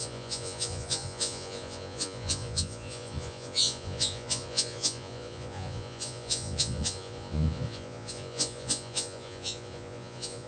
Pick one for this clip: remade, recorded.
remade